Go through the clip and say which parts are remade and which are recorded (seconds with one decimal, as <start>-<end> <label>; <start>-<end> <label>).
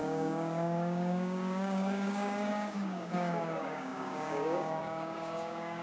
0.0-5.8 remade